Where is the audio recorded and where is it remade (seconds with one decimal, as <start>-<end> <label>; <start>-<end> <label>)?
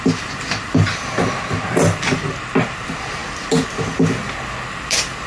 0.0-3.2 recorded; 3.2-4.1 remade; 4.1-5.3 recorded